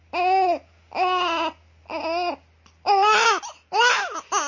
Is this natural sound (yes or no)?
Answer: yes